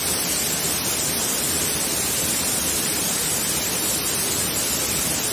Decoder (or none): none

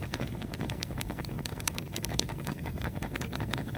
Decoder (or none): codec, SNAC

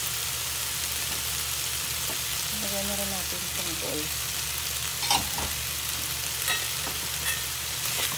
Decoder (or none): none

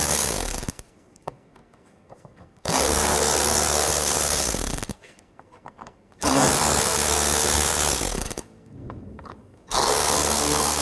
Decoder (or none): codec, SNAC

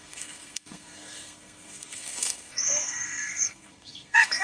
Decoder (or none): codec, SNAC